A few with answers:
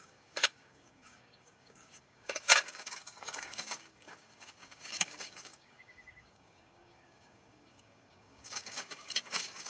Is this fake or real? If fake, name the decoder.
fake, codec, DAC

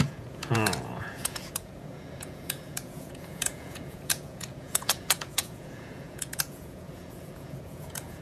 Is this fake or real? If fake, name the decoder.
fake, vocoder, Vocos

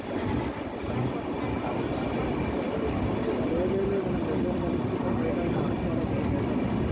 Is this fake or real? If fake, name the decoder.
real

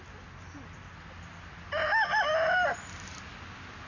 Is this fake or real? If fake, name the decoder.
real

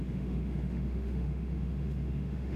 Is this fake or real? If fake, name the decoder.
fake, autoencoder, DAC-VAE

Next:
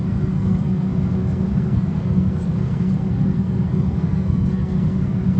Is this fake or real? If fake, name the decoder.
fake, codec, SNAC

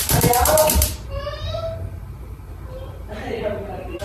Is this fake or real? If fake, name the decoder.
fake, vocoder, BigVGAN v2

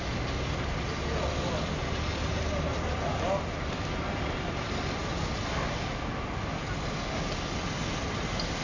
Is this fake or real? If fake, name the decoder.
real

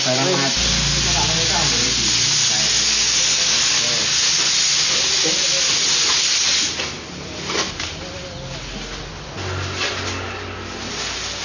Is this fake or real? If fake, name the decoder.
real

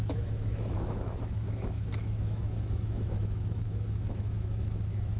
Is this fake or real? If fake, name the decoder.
fake, autoencoder, DAC-VAE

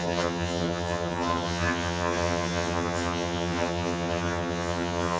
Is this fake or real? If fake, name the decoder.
fake, vocoder, HiFi-GAN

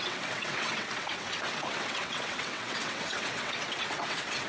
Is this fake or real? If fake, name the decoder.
fake, vocoder, WaveNeXt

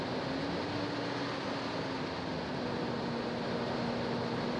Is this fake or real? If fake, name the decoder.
real